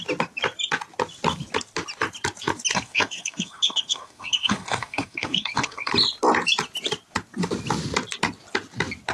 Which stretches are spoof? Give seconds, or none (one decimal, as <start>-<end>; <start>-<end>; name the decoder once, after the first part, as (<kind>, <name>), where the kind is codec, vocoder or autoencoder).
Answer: 2.7-5.9 (codec, SNAC)